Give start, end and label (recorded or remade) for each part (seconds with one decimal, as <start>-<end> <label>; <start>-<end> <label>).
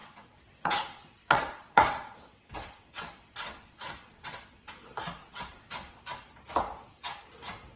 0.0-4.7 remade; 4.7-5.2 recorded; 5.2-6.0 remade; 6.0-7.8 recorded